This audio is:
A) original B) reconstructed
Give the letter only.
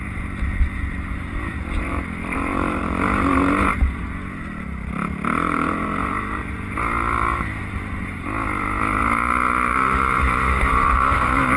B